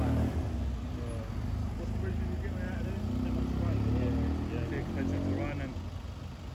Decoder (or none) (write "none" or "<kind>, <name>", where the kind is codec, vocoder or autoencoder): none